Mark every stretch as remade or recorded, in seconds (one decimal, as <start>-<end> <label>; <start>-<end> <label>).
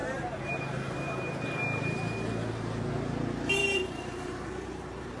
0.0-1.8 remade; 1.8-3.6 recorded; 3.6-5.2 remade